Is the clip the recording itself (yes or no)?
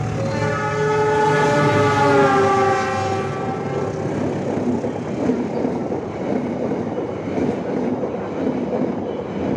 yes